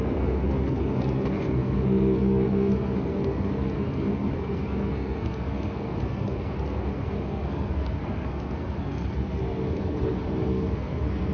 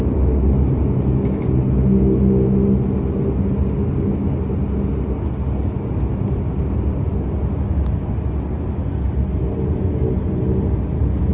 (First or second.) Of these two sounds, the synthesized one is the first